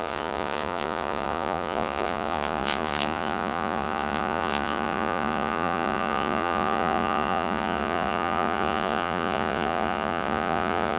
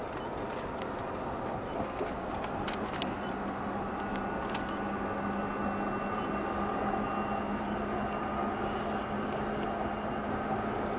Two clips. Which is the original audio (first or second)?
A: second